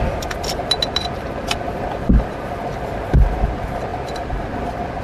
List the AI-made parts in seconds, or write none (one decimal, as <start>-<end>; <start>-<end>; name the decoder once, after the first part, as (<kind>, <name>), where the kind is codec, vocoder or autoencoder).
none